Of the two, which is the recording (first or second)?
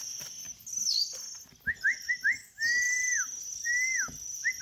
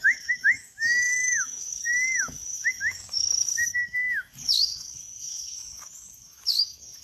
first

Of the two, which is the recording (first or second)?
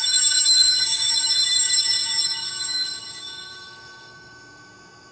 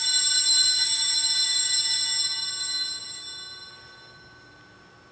second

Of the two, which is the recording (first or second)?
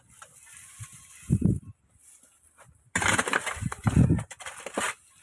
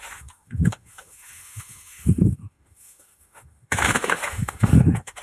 first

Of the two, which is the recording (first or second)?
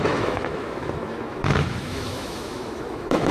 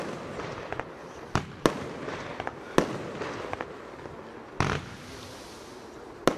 second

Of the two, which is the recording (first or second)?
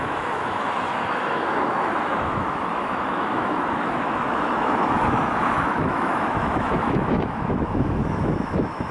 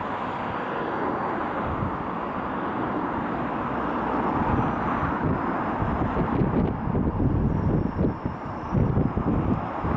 second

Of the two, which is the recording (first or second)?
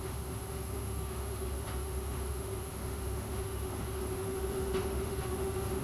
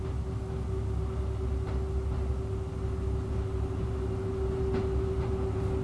second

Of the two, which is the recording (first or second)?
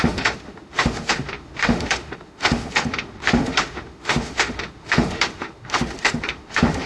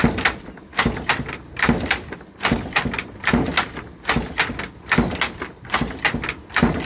second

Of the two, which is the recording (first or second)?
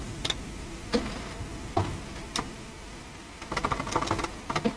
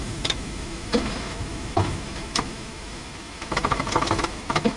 first